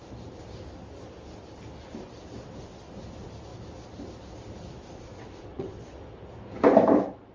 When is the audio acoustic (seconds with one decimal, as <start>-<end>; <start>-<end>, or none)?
0.0-5.1; 5.8-7.3